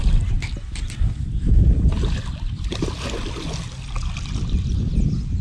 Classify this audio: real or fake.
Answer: real